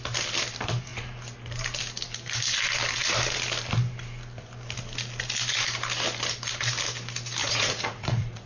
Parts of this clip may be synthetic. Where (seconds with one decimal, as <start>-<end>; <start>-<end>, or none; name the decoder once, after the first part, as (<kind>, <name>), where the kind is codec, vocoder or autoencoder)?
7.4-8.5 (vocoder, Vocos)